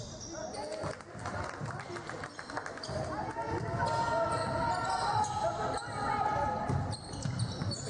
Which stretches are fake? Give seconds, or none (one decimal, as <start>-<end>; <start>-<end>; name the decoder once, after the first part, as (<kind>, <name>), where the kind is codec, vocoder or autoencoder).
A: none